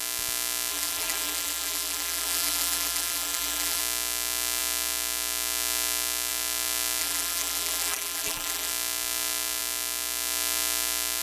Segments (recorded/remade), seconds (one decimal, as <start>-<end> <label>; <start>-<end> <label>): 0.0-0.7 recorded; 0.7-3.8 remade; 3.8-7.0 recorded; 7.0-8.7 remade; 8.7-11.2 recorded